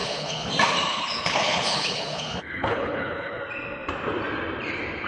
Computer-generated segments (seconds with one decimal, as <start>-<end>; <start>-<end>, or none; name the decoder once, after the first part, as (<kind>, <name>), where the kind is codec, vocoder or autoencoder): 0.0-0.5 (codec, HILCodec); 0.9-3.4